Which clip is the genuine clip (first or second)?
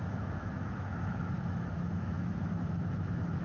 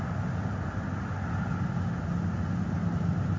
second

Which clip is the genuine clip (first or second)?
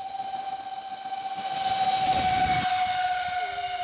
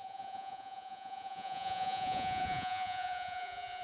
first